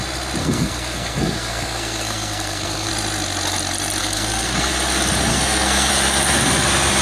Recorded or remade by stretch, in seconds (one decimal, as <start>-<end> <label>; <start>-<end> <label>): 0.0-0.4 recorded; 0.4-2.9 remade; 2.9-4.0 recorded; 4.0-4.7 remade; 4.7-5.3 recorded; 5.3-5.9 remade; 5.9-7.0 recorded